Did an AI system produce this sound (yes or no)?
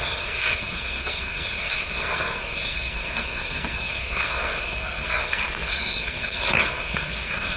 yes